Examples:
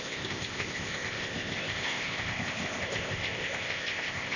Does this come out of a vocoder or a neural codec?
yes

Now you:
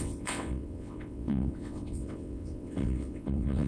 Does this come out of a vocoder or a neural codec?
yes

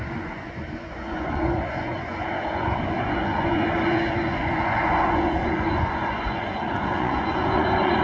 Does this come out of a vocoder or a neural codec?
yes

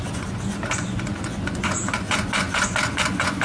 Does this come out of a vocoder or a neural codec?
yes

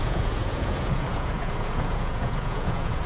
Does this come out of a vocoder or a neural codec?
yes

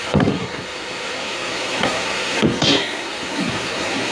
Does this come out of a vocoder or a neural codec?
yes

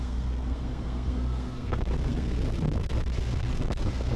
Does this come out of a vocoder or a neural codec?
yes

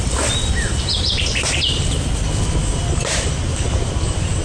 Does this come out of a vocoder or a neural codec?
no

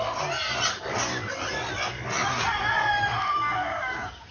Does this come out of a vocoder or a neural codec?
no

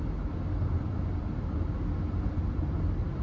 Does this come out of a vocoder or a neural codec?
no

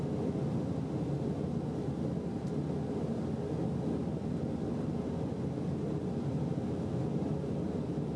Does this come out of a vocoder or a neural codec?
no